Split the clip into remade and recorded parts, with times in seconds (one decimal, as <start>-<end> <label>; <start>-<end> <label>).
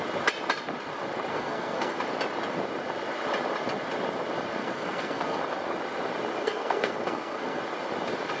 0.0-1.3 recorded; 1.3-2.0 remade; 2.0-4.6 recorded; 4.6-5.4 remade; 5.4-6.4 recorded; 6.4-7.6 remade; 7.6-8.4 recorded